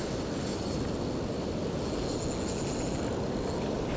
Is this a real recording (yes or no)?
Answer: yes